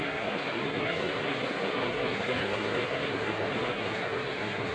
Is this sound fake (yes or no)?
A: yes